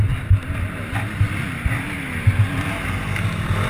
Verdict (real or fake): real